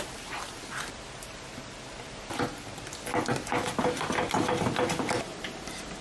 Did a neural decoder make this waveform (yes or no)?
no